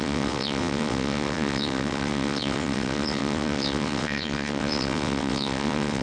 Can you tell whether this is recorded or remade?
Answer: remade